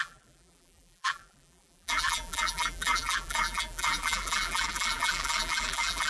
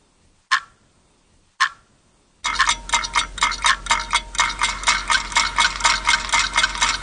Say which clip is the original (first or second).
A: second